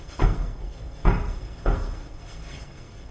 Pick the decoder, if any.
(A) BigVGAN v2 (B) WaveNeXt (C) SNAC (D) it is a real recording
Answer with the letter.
C